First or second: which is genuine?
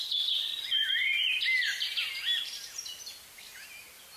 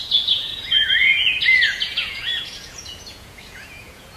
first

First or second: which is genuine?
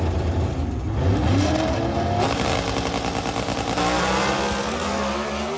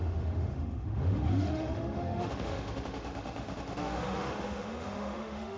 first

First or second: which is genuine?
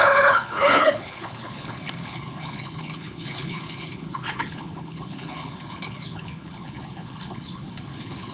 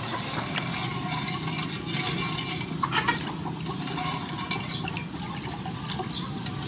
second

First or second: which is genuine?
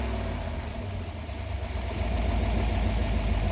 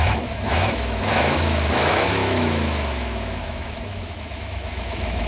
first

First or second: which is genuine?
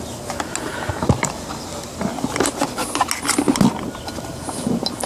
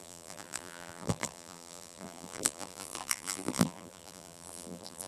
first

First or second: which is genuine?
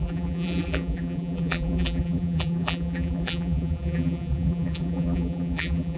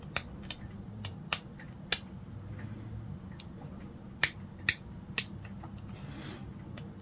second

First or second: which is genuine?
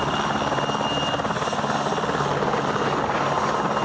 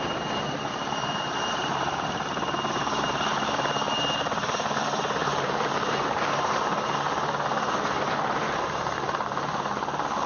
first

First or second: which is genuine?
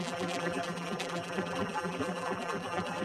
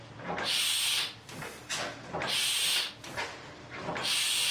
second